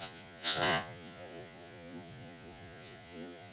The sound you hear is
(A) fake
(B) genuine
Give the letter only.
A